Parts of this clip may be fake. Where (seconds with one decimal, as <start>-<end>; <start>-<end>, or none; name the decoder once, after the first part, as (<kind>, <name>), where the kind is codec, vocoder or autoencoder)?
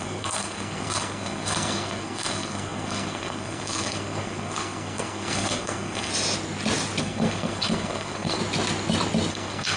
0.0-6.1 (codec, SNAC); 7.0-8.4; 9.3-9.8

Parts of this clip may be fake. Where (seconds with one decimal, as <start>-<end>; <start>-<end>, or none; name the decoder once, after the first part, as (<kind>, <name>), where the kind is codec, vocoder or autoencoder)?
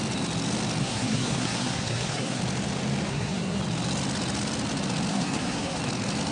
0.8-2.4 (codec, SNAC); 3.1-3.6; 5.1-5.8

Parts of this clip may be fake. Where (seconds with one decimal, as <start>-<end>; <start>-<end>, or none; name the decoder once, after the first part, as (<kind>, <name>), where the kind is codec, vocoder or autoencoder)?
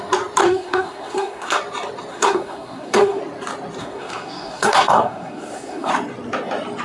0.4-1.6 (codec, SNAC); 2.1-3.2; 3.8-5.9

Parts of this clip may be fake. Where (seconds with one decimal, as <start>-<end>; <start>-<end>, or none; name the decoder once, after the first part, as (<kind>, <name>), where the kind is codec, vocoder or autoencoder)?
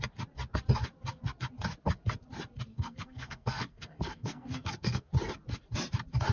2.7-5.1 (codec, SNAC)